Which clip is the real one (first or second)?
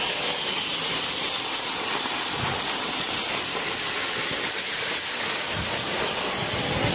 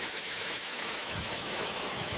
first